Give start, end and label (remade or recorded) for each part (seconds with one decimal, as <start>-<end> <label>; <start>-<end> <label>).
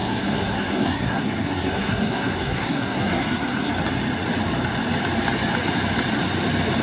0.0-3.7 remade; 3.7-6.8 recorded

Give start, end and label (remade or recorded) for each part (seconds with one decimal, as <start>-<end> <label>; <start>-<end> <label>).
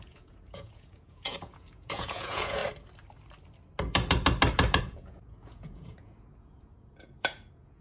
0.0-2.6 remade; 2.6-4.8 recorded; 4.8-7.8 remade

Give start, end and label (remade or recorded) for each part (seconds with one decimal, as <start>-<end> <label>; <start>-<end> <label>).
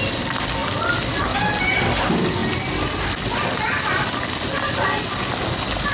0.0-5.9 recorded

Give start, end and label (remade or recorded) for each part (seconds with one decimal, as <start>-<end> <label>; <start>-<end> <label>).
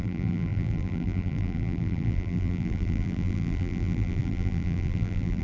0.0-5.4 remade